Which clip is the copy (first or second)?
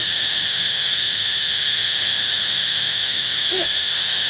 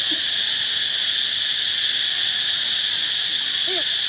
first